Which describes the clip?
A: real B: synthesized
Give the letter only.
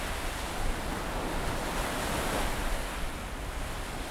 A